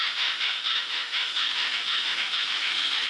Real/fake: fake